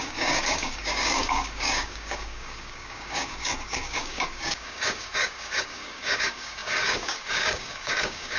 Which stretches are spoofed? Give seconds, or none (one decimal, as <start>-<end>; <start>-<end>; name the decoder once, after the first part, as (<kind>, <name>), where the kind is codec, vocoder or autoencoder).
0.0-8.4 (codec, DAC)